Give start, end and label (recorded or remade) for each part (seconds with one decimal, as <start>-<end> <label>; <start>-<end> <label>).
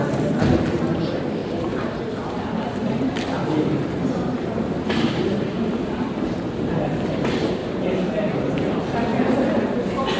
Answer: 0.0-1.4 recorded; 1.4-2.0 remade; 2.0-2.8 recorded; 2.8-6.2 remade; 6.2-7.6 recorded; 7.6-8.1 remade; 8.1-10.2 recorded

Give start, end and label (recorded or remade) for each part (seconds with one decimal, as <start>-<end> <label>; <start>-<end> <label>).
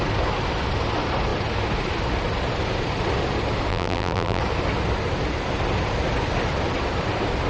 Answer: 0.0-3.7 recorded; 3.7-4.4 remade; 4.4-7.5 recorded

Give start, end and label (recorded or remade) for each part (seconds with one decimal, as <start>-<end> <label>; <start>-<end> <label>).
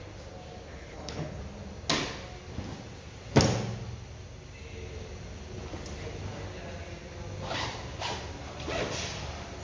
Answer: 0.0-0.7 recorded; 0.7-1.4 remade; 1.4-9.6 recorded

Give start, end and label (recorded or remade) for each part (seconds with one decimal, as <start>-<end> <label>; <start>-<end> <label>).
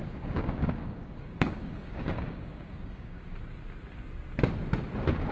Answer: 0.0-3.2 remade; 3.2-5.3 recorded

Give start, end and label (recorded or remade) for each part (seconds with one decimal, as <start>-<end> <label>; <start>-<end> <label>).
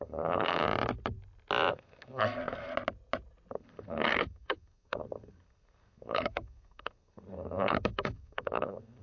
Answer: 0.0-0.6 remade; 0.6-1.7 recorded; 1.7-2.7 remade; 2.7-3.5 recorded; 3.5-9.0 remade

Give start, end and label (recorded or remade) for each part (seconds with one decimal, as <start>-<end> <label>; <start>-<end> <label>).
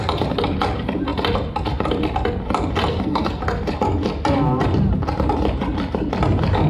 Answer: 0.0-2.9 recorded; 2.9-3.4 remade; 3.4-6.7 recorded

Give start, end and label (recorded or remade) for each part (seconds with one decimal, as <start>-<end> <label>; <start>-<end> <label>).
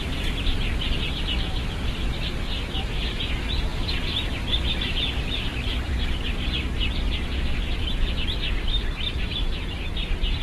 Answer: 0.0-10.4 remade